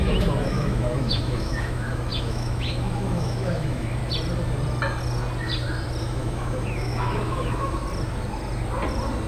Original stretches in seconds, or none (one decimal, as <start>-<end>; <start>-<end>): 4.0-6.0; 7.8-9.3